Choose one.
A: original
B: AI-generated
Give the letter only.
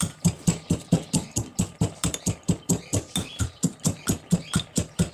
B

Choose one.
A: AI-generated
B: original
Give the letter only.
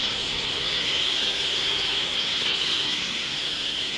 A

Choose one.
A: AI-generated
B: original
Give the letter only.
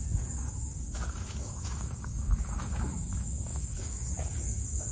A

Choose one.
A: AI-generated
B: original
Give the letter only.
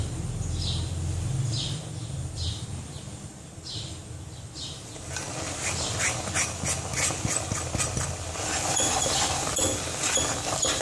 B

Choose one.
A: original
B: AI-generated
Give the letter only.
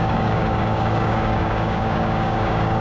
B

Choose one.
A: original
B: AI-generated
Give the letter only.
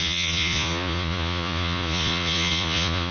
B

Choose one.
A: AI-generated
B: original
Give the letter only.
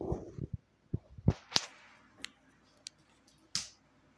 B